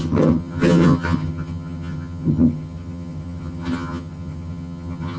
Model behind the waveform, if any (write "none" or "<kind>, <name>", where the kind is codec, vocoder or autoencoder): vocoder, HiFi-GAN